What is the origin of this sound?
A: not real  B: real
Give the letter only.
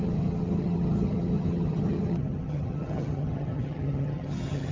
A